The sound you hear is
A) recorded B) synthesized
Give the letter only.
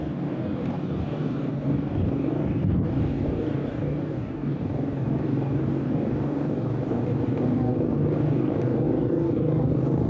B